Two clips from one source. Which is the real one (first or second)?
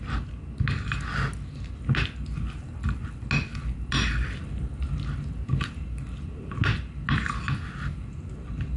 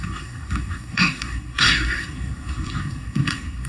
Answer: first